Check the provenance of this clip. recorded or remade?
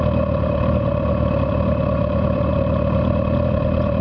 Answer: recorded